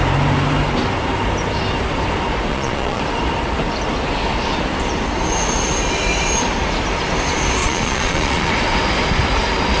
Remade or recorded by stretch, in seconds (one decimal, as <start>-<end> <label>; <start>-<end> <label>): 0.0-2.5 recorded; 2.5-3.0 remade; 3.0-7.6 recorded; 7.6-8.5 remade; 8.5-9.8 recorded

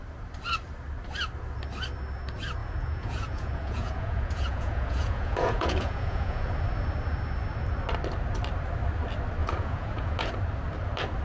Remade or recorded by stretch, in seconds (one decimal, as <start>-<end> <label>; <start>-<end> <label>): 0.0-2.6 recorded; 2.6-6.5 remade; 6.5-9.4 recorded; 9.4-10.2 remade; 10.2-11.2 recorded

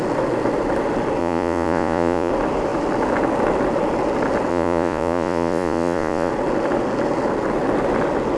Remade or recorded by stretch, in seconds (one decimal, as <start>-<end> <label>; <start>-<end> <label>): 0.0-1.2 recorded; 1.2-2.3 remade; 2.3-4.5 recorded; 4.5-6.3 remade; 6.3-8.4 recorded

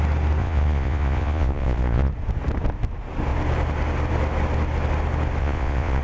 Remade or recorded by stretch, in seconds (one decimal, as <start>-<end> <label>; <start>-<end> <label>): 0.0-0.4 recorded; 0.4-2.1 remade; 2.1-5.4 recorded; 5.4-6.0 remade

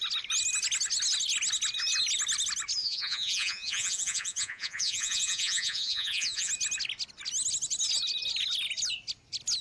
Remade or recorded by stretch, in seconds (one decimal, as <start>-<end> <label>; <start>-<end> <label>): 0.0-2.8 recorded; 2.8-6.5 remade; 6.5-9.6 recorded